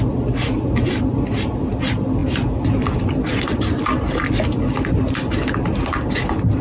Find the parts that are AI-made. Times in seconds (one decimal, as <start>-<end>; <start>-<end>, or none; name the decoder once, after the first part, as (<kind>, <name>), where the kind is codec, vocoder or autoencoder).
none